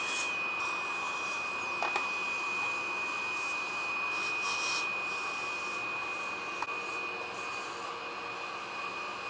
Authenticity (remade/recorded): recorded